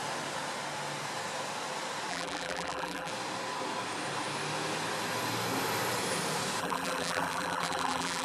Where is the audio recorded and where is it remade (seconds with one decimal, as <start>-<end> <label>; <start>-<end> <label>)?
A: 0.0-2.1 recorded; 2.1-3.1 remade; 3.1-6.6 recorded; 6.6-8.2 remade